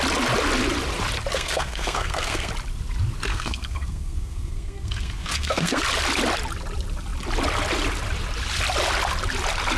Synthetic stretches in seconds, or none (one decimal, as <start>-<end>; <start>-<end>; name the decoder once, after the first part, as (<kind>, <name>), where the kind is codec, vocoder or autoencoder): 1.3-2.5 (codec, SNAC); 3.3-5.8